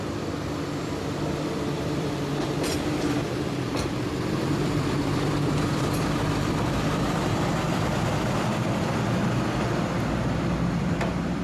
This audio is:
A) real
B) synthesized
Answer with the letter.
B